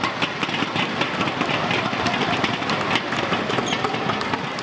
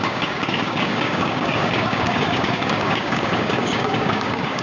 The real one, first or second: first